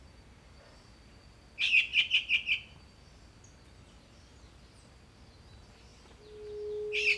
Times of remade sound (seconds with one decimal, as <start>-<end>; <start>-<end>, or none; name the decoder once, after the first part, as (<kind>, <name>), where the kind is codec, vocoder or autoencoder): none